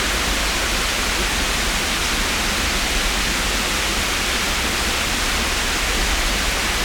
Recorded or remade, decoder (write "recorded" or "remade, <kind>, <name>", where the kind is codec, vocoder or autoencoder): recorded